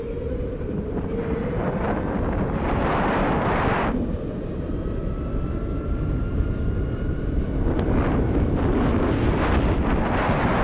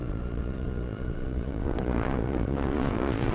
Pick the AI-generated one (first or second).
second